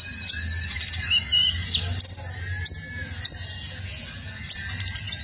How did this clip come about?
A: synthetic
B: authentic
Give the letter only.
B